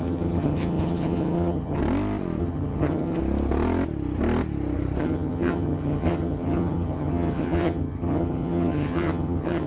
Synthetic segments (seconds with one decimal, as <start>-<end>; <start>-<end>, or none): 0.0-1.8; 2.4-3.2; 5.0-9.7